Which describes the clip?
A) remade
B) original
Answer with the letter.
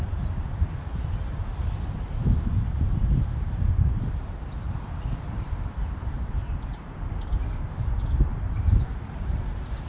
A